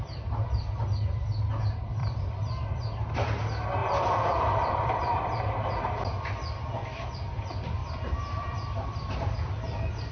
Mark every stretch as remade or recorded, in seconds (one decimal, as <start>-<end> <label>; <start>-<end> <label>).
0.0-2.0 recorded; 2.0-2.7 remade; 2.7-3.8 recorded; 3.8-5.7 remade; 5.7-7.8 recorded; 7.8-10.1 remade